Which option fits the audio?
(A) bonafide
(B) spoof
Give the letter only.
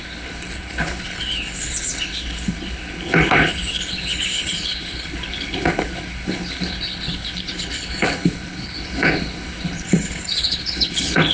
B